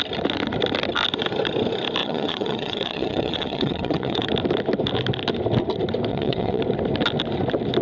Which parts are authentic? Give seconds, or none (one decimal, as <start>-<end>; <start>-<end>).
0.0-2.0; 4.3-6.1; 6.6-7.8